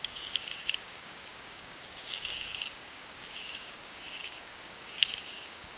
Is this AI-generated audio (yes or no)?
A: yes